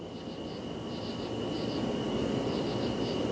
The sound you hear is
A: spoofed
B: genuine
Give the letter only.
B